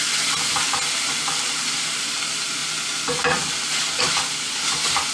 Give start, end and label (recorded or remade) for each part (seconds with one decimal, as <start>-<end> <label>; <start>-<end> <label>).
0.0-2.6 remade; 2.6-4.0 recorded; 4.0-5.1 remade